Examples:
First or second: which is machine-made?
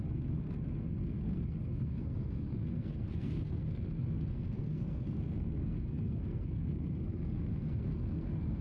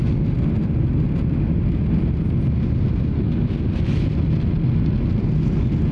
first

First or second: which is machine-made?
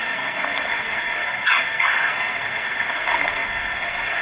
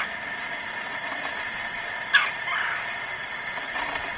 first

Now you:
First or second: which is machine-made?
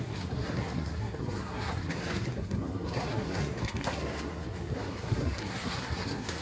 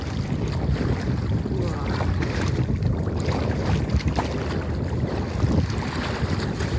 first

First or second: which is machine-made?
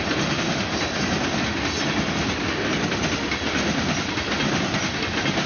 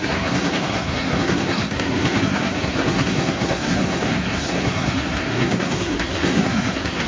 second